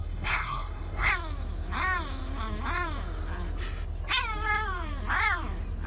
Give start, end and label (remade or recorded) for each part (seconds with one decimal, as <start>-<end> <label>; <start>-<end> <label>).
0.0-1.1 remade; 1.1-5.9 recorded